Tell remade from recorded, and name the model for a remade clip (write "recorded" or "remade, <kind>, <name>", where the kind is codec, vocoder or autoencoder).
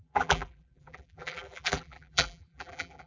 remade, vocoder, BigVGAN v2